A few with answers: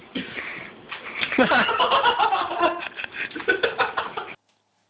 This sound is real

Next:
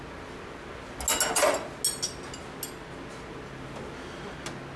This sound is real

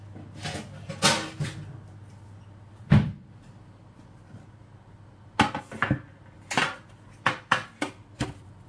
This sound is real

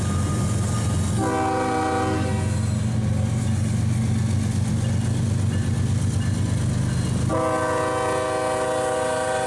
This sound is real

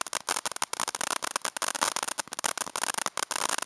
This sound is real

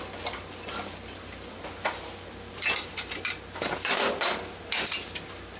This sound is real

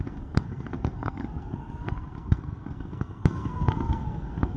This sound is fake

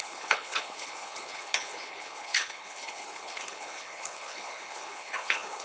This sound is fake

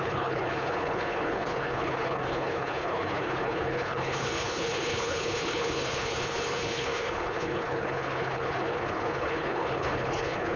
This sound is fake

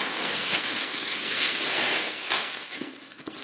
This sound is fake